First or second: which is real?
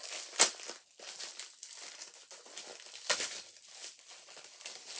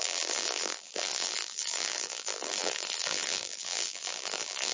first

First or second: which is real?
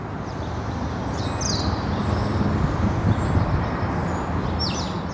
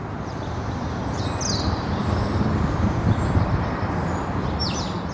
first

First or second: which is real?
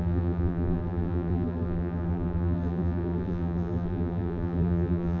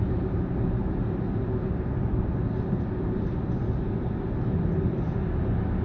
second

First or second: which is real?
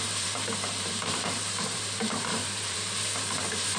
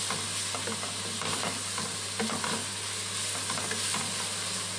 second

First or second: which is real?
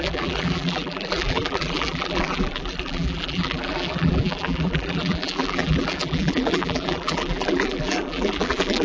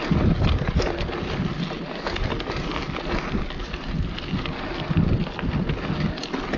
second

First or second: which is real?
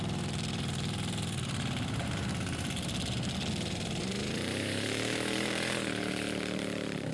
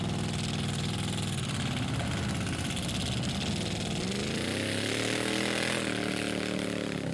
second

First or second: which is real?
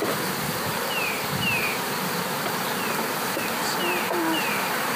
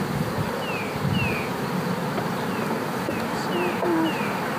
second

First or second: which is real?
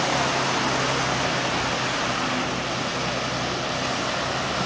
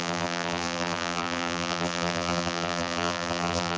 first